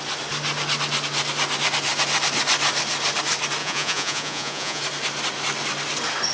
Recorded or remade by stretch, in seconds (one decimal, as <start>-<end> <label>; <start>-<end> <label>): 0.0-3.6 recorded; 3.6-4.8 remade; 4.8-6.3 recorded